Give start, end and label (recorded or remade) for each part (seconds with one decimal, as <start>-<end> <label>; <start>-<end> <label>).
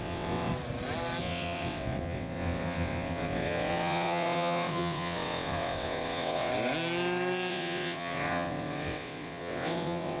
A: 0.0-0.5 remade; 0.5-1.2 recorded; 1.2-6.5 remade; 6.5-7.5 recorded; 7.5-10.2 remade